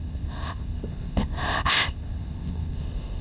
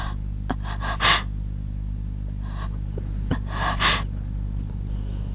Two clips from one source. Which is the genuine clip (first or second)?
second